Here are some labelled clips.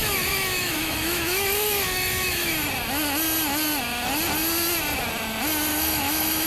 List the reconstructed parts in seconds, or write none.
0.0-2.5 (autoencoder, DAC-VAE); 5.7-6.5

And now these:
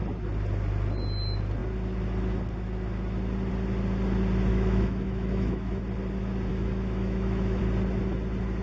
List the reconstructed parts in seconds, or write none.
4.5-5.8 (autoencoder, DAC-VAE); 6.5-7.6

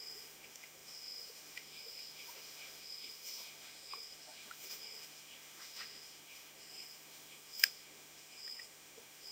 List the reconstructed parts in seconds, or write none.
0.0-9.3 (autoencoder, DAC-VAE)

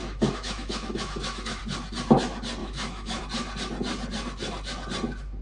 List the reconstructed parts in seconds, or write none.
0.0-1.6 (autoencoder, DAC-VAE); 2.6-3.2

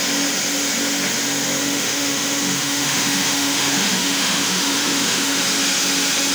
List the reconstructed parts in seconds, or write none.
1.6-5.4 (autoencoder, DAC-VAE)

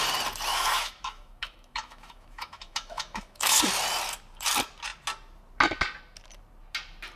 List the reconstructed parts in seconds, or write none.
0.5-3.6 (autoencoder, DAC-VAE)

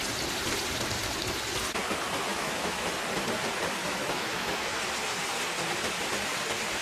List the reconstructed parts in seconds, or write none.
2.3-2.9 (autoencoder, DAC-VAE); 3.8-4.8

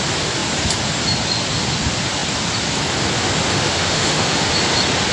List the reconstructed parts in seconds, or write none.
3.5-4.5 (autoencoder, DAC-VAE)